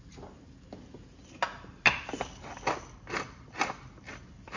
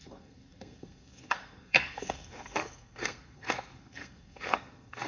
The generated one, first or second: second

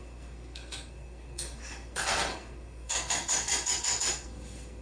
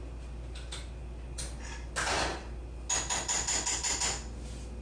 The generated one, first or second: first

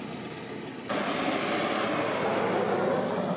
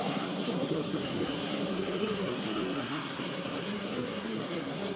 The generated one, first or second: second